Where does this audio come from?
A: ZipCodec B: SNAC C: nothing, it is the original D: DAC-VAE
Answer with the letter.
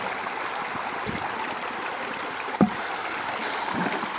C